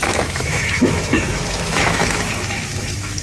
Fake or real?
fake